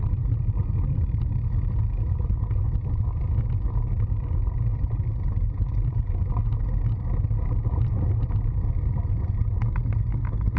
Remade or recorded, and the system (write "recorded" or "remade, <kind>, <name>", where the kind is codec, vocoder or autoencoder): recorded